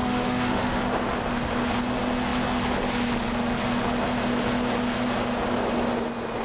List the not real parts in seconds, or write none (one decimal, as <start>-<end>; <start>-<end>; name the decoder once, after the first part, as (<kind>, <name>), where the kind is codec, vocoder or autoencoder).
0.0-0.8 (autoencoder, DAC-VAE)